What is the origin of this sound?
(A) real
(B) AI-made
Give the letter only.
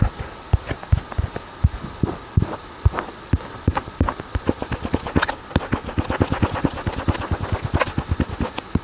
A